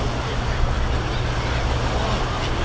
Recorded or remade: recorded